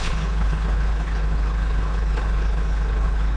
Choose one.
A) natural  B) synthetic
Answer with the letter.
B